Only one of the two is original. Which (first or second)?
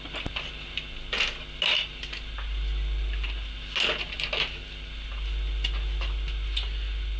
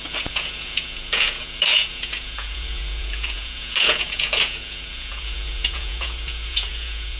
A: first